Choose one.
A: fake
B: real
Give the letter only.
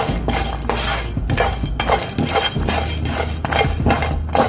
B